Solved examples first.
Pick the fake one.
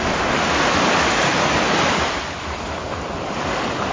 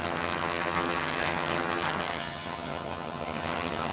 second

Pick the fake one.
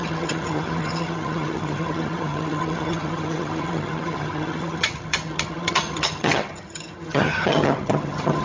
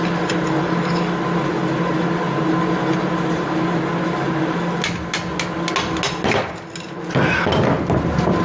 first